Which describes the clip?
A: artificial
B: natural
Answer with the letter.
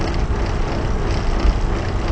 B